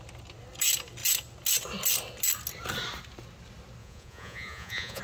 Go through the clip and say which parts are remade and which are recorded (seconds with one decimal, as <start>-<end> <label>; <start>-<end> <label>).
0.0-3.8 recorded; 3.8-5.0 remade